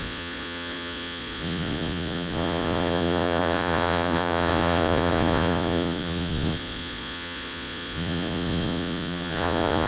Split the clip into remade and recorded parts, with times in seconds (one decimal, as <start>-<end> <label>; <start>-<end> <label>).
0.0-9.9 remade